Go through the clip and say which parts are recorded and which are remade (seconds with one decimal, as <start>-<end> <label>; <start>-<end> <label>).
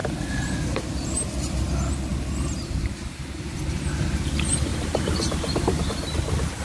0.0-0.5 remade; 0.5-2.1 recorded; 2.1-3.2 remade; 3.2-4.7 recorded; 4.7-5.8 remade; 5.8-6.6 recorded